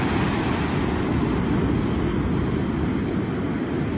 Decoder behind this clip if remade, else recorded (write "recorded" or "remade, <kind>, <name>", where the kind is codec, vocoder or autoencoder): recorded